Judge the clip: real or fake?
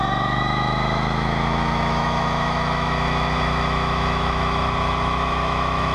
fake